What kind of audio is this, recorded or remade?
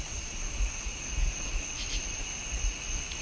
remade